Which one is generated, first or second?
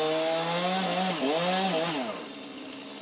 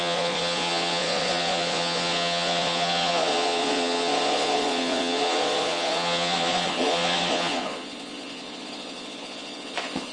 second